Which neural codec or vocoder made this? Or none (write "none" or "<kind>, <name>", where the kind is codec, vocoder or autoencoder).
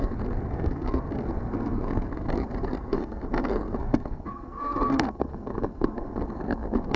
codec, SNAC